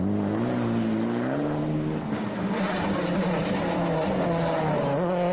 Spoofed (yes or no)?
no